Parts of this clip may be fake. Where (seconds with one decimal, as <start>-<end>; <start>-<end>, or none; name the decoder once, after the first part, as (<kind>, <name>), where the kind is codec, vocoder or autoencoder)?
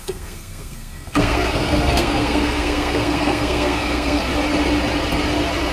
0.0-4.3 (codec, SNAC)